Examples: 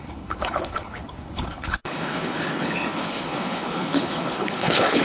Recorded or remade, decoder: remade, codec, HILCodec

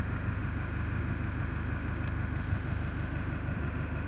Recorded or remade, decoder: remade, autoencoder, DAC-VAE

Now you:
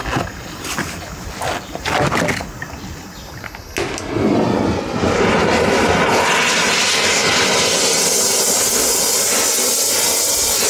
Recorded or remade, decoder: recorded